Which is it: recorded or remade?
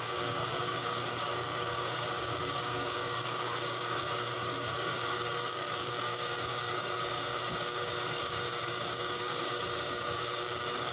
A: remade